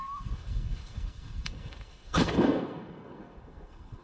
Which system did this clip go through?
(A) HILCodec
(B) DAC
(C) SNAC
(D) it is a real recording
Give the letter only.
C